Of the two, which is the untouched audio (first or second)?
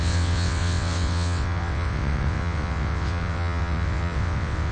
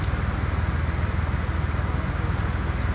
second